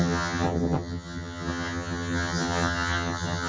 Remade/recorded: remade